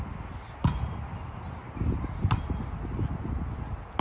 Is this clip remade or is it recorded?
recorded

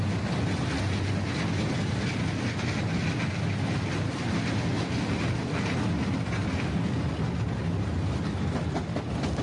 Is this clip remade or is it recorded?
recorded